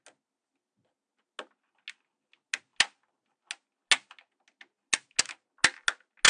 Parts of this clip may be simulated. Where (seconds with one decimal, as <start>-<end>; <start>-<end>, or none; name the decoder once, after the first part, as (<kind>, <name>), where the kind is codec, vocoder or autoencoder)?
none

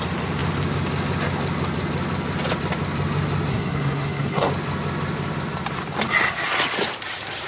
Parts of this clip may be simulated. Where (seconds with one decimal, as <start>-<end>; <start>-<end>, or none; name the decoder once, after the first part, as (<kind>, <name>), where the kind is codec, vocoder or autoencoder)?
3.5-4.5 (codec, SNAC)